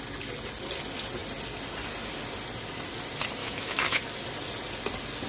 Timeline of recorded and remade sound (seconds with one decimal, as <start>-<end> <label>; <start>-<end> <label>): 0.0-3.4 recorded; 3.4-4.0 remade; 4.0-5.3 recorded